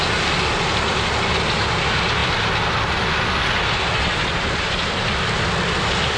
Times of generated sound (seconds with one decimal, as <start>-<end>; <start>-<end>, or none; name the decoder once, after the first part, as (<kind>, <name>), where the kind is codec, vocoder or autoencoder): none